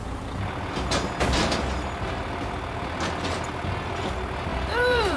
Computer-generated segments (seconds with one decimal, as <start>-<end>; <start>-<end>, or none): 4.5-5.2